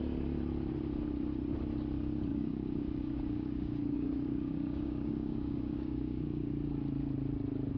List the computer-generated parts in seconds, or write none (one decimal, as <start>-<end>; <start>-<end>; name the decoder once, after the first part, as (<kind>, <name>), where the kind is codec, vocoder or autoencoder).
2.3-6.5 (codec, DAC)

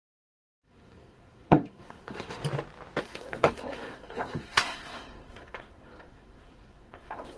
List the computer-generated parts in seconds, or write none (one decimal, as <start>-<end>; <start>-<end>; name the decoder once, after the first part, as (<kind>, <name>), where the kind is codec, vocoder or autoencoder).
0.0-2.4 (codec, SNAC); 3.0-7.4

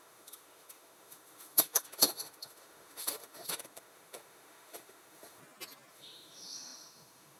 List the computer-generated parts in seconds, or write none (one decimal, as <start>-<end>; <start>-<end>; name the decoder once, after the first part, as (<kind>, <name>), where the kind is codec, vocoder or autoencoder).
0.0-5.4 (autoencoder, DAC-VAE); 5.9-7.4

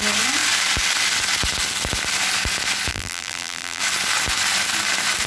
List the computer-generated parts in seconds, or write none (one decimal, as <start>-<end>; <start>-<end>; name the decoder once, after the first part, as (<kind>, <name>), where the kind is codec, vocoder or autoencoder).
2.9-3.8 (vocoder, BigVGAN v2)

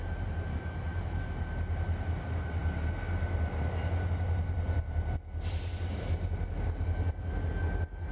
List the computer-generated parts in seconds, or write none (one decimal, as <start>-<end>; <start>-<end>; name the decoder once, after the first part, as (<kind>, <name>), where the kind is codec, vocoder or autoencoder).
none

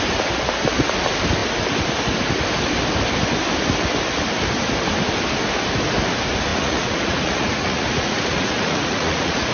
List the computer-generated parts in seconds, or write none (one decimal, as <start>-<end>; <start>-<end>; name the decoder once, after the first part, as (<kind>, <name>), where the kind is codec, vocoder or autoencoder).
6.5-9.5 (vocoder, Vocos)